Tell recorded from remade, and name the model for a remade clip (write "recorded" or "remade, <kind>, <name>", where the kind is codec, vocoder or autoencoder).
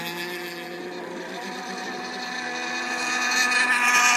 recorded